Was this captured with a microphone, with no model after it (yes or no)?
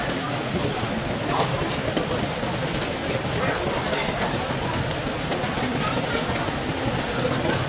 yes